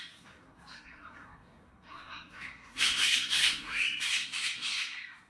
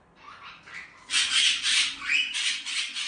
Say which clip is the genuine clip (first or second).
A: second